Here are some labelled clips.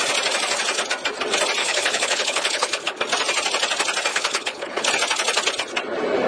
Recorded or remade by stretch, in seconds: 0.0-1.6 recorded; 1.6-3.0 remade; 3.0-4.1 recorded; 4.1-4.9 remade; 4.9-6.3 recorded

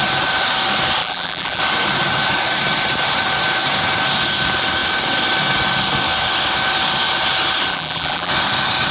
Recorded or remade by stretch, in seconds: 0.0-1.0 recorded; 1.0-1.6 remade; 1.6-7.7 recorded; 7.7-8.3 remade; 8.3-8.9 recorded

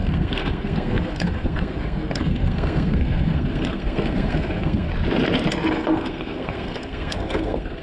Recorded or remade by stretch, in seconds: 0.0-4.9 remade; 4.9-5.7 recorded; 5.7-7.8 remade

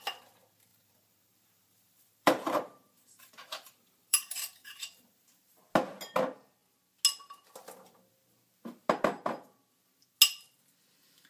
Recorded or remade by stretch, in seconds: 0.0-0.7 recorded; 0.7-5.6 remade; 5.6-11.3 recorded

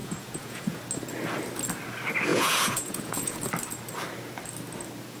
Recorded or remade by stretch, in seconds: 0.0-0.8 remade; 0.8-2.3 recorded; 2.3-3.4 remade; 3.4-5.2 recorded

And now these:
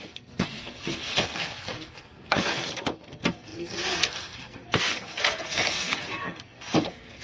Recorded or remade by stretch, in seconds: 0.0-7.2 remade